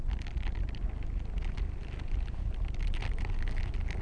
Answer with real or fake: real